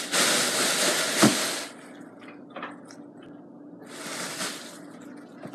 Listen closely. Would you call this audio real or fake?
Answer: real